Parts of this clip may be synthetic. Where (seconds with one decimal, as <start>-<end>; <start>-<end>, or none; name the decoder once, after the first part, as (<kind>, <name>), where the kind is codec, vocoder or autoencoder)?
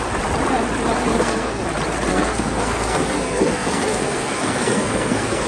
1.1-1.6 (codec, SNAC); 2.1-5.5